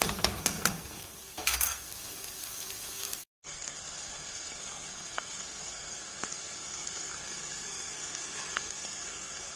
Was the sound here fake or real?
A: fake